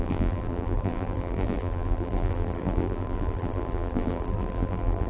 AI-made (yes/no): yes